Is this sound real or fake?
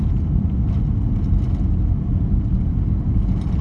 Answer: real